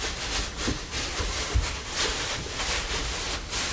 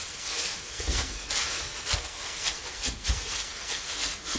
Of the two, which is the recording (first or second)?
first